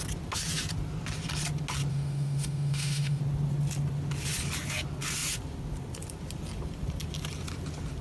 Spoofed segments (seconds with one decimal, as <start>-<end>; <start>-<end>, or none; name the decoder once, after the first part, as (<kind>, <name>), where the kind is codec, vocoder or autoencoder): 1.9-3.2 (autoencoder, DAC-VAE)

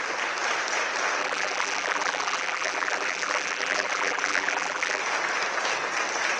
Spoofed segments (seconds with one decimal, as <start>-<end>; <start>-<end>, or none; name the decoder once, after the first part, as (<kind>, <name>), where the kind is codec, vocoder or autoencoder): 1.2-5.0 (vocoder, BigVGAN v2)

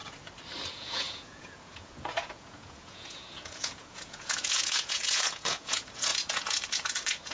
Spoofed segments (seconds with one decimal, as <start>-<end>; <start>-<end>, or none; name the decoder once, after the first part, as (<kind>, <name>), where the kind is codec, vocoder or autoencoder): 0.7-7.3 (vocoder, Vocos)

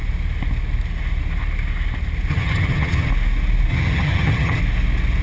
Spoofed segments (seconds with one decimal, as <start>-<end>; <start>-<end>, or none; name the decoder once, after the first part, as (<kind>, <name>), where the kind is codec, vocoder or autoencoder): 2.3-3.1 (vocoder, HiFi-GAN); 3.7-4.6

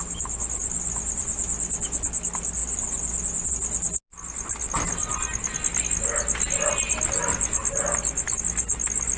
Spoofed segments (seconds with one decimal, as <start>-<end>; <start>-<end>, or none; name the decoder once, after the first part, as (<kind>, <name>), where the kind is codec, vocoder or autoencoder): none

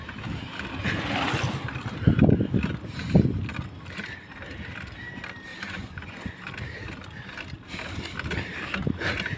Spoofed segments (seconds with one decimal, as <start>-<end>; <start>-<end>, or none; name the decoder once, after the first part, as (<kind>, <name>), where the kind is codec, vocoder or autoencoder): 5.5-6.4 (vocoder, Vocos)

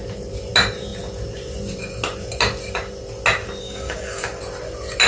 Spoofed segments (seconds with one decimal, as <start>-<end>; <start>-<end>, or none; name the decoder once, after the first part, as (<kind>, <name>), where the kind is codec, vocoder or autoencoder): 3.6-4.4 (codec, DAC)